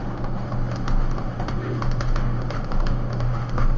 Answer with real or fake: fake